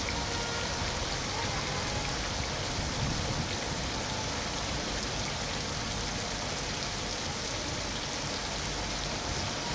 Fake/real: real